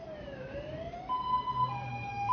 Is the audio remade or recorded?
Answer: recorded